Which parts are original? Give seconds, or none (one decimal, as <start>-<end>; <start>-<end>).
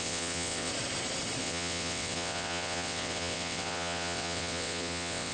0.7-1.4